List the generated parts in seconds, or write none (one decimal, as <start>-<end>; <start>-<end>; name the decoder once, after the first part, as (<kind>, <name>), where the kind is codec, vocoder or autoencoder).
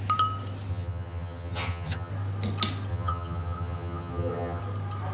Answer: 0.7-2.1 (vocoder, HiFi-GAN); 2.9-4.6